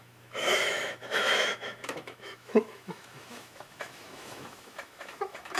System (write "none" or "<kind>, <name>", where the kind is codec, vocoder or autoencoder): autoencoder, DAC-VAE